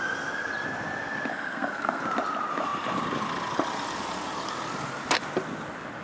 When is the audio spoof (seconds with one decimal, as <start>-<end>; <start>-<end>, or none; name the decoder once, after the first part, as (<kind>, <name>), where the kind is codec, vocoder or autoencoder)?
1.3-2.0 (codec, SNAC)